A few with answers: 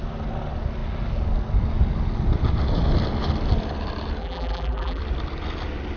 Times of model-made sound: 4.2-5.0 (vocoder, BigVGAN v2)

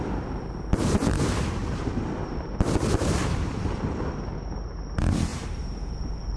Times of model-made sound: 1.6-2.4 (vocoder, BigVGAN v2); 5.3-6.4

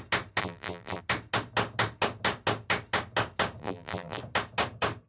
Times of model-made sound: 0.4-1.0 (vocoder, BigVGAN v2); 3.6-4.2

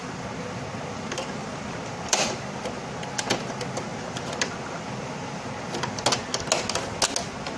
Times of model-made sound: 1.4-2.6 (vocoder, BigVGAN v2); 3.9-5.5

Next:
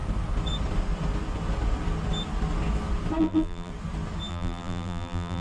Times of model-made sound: 3.2-3.7 (vocoder, BigVGAN v2); 4.3-5.4